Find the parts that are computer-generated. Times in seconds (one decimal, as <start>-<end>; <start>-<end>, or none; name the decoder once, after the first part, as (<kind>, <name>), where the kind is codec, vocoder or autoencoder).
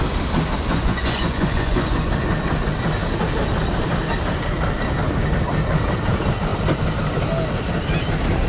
0.7-2.1 (vocoder, Vocos)